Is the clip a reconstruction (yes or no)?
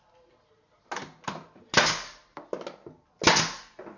no